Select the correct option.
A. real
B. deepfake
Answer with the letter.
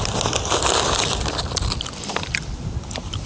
A